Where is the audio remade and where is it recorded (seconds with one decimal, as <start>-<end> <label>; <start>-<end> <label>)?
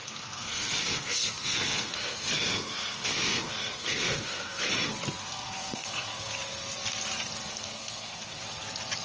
0.0-4.7 remade; 4.7-5.2 recorded; 5.2-6.3 remade; 6.3-7.5 recorded; 7.5-8.4 remade; 8.4-9.0 recorded